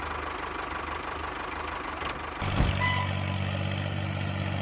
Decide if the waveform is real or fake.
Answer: real